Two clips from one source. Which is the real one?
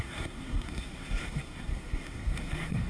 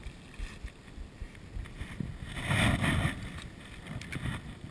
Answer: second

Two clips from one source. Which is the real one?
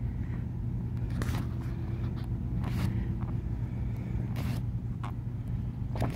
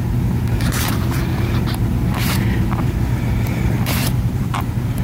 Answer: first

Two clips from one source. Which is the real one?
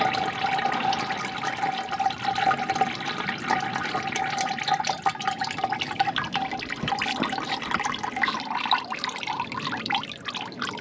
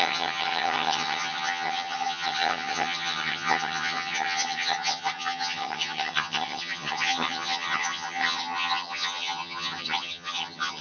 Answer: first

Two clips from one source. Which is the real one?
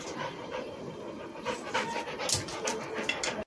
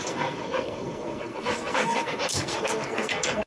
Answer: first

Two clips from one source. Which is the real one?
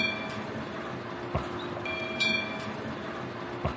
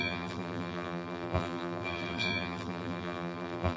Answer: first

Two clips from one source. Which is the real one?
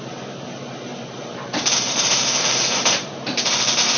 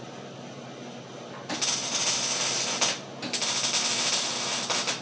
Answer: second